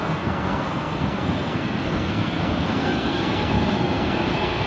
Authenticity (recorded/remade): remade